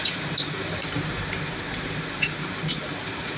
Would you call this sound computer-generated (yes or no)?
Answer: yes